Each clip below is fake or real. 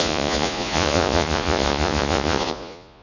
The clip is fake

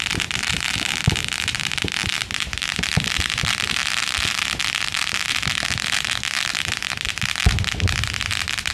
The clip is real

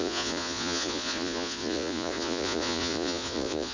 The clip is fake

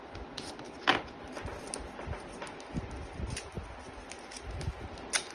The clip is real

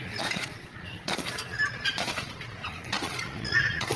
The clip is fake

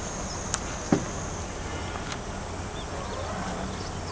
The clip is real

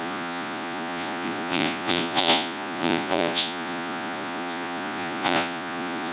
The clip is fake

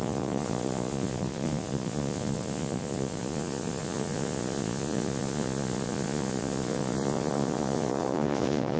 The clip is fake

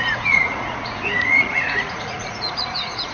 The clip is fake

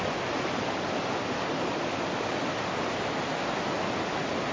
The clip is real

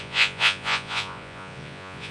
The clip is fake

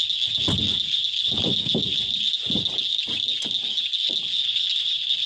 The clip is real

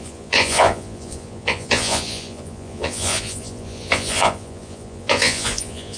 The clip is fake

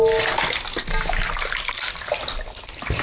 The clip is real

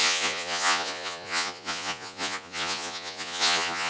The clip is fake